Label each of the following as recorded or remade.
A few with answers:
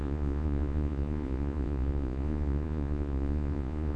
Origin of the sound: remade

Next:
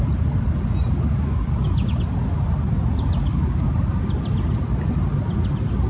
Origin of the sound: recorded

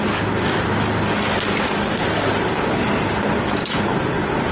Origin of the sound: recorded